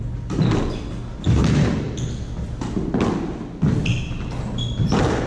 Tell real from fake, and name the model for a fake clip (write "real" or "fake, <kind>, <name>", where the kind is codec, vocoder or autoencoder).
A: real